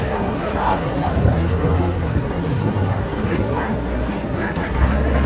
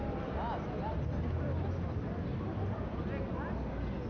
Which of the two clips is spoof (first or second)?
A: first